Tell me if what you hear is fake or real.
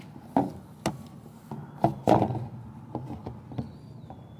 real